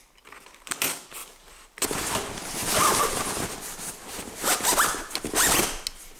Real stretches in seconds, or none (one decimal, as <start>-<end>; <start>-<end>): 0.0-6.2